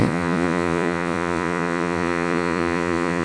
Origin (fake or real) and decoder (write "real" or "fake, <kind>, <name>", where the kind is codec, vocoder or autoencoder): fake, vocoder, Vocos